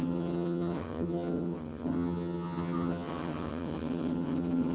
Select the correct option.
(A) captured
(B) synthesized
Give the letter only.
B